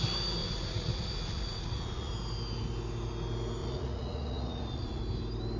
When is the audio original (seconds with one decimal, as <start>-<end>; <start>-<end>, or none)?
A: 0.0-0.4; 2.1-3.6; 5.0-5.6